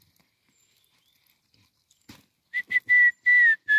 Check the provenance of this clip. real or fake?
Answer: real